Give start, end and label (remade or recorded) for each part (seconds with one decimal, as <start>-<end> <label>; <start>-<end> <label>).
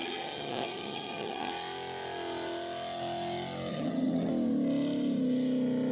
0.0-1.5 remade; 1.5-3.7 recorded; 3.7-4.3 remade; 4.3-5.9 recorded